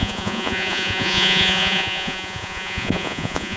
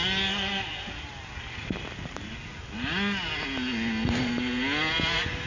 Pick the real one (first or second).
second